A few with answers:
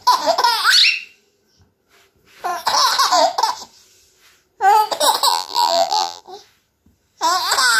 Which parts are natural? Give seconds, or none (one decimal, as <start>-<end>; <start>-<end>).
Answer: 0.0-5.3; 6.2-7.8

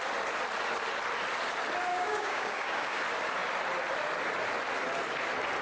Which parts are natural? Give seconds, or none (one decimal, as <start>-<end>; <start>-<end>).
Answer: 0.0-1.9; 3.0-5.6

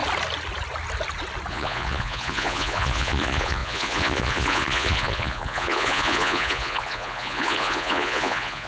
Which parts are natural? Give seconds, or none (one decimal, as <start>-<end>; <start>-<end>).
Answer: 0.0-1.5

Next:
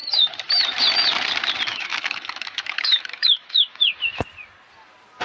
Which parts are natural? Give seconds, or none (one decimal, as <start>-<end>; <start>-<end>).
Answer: 0.0-1.7; 3.8-5.2